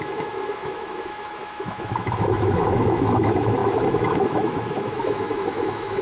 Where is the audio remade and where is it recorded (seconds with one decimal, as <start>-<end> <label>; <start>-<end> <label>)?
0.0-6.0 remade